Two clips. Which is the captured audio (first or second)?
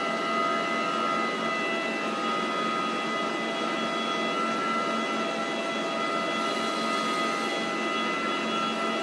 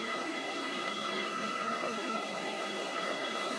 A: first